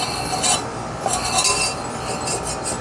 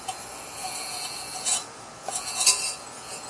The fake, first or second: second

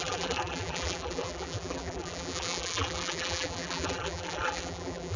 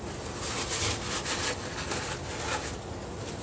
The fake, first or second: first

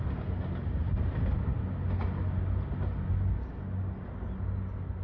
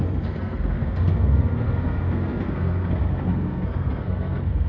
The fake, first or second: second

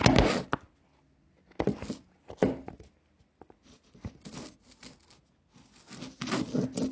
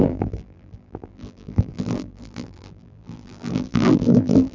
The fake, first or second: second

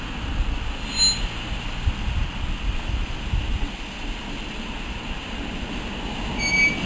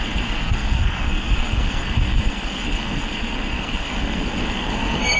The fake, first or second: second